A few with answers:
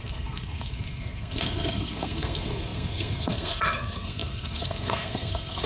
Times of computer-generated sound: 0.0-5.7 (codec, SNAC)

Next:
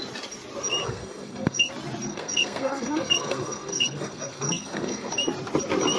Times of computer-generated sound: 0.8-1.7 (codec, SNAC); 2.1-5.1

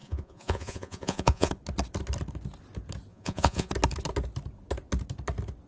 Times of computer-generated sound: 0.0-1.5 (vocoder, Vocos); 3.1-3.7

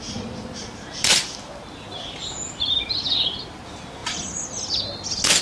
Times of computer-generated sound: none

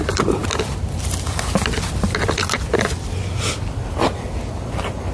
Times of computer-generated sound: none

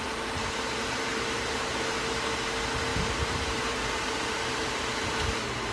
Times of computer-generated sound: 1.1-2.0 (vocoder, BigVGAN v2); 2.9-5.7